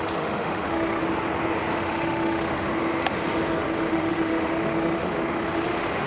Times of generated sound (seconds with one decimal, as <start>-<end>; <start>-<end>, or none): 0.0-1.0; 1.8-2.7; 3.6-6.1